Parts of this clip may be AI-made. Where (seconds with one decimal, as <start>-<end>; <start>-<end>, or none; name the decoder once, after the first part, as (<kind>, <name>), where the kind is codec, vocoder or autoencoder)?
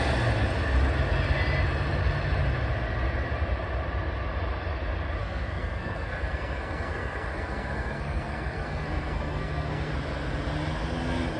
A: 5.2-9.9 (codec, SNAC)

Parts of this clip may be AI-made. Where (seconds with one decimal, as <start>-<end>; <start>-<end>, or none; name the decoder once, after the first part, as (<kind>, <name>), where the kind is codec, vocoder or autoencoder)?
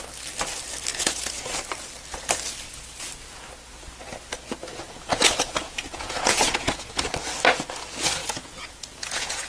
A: 0.9-1.5 (vocoder, Vocos); 4.7-7.0; 8.2-9.5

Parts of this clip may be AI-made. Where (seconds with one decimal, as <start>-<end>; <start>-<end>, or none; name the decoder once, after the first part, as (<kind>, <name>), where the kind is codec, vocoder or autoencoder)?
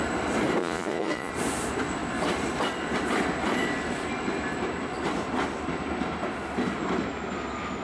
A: 0.6-1.3 (vocoder, Vocos)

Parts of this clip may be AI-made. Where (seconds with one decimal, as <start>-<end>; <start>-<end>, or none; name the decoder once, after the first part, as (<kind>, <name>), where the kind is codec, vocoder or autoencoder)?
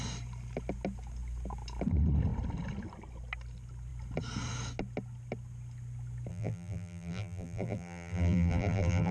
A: 6.3-9.1 (vocoder, BigVGAN v2)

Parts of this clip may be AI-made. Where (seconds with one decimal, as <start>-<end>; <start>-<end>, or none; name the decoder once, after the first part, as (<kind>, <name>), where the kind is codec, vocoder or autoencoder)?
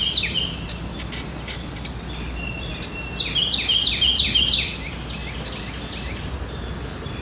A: none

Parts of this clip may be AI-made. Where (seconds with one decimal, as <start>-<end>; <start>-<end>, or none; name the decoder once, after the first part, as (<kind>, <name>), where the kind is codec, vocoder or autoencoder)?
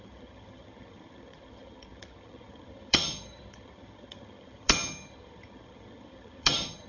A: 0.0-6.9 (vocoder, HiFi-GAN)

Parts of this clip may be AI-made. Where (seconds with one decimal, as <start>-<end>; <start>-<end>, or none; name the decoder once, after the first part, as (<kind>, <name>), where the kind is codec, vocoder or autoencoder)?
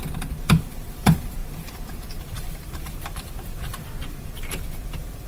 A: 0.0-5.3 (vocoder, BigVGAN v2)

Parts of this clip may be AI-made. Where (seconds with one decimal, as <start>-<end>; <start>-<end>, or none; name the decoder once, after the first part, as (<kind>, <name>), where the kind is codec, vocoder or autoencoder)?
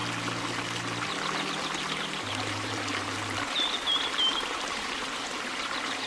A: 2.0-6.1 (vocoder, BigVGAN v2)